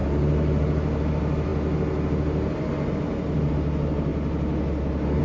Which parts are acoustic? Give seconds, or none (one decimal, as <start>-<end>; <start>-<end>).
0.0-5.2